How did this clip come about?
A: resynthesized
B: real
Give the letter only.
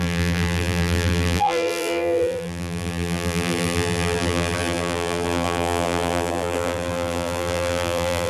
A